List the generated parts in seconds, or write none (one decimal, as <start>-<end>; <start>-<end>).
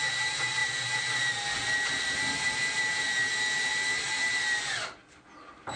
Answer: none